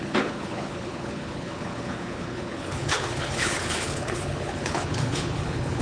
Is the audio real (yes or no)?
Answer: no